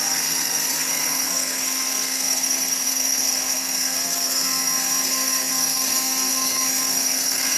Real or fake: fake